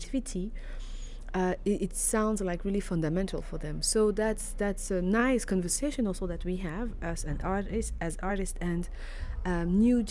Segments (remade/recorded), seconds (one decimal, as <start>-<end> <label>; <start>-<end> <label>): 0.0-10.1 recorded